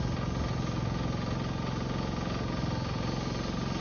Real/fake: real